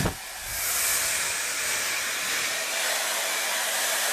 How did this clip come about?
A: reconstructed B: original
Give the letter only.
B